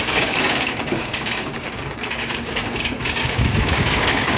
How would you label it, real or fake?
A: fake